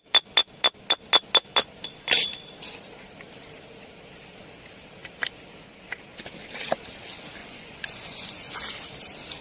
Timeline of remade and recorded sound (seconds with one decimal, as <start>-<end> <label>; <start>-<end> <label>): 0.0-7.4 recorded; 7.4-8.6 remade; 8.6-9.4 recorded